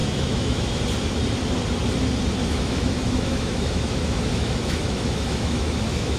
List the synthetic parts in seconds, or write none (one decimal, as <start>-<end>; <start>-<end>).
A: 0.0-0.8; 2.4-6.2